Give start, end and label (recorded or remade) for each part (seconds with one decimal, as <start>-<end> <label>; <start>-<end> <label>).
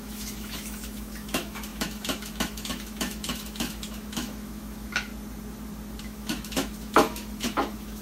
0.0-5.1 remade; 5.1-6.0 recorded; 6.0-8.0 remade